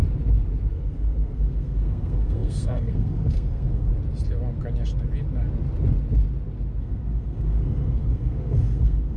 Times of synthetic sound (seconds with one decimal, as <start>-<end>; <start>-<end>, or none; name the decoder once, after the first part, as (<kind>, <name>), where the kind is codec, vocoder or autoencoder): 0.7-3.9 (codec, SNAC); 6.8-9.2